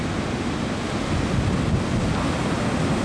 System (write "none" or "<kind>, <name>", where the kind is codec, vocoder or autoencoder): none